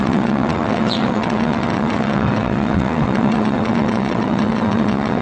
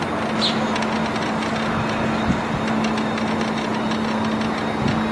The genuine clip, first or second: second